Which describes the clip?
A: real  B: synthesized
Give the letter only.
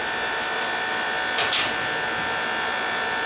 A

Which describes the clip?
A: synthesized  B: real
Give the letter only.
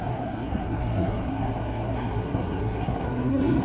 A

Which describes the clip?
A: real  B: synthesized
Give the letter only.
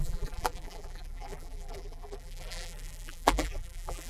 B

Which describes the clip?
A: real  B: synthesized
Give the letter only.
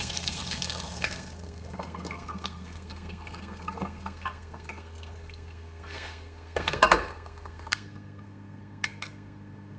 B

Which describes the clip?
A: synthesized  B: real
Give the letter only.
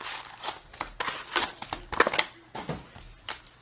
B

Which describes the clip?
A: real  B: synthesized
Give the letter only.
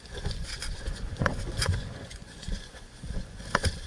B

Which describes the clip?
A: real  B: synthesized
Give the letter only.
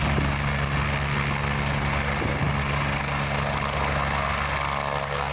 A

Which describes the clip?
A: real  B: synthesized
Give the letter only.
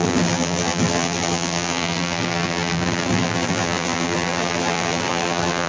B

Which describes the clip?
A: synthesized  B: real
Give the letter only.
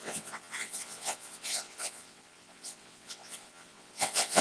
A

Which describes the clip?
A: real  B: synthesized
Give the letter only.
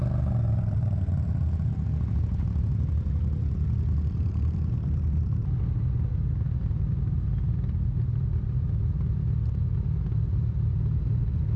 A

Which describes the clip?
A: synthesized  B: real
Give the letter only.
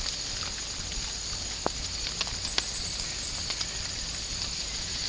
B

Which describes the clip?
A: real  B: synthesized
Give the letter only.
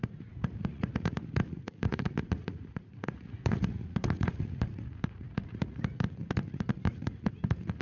B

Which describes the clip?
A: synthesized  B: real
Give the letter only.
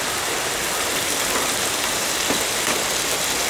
B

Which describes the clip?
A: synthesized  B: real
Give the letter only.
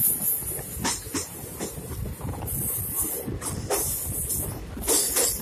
B